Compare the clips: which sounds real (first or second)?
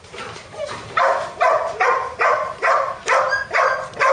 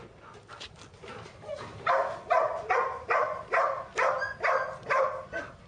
second